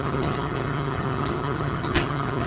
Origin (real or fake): fake